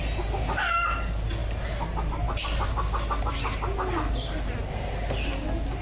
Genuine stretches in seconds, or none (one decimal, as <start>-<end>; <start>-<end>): 0.0-5.8

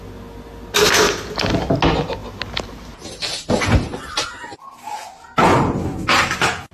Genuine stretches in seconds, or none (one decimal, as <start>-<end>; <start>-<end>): 0.0-6.7

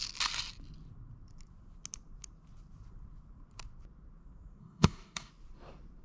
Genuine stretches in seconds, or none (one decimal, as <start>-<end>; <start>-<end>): 0.0-4.6; 5.3-6.0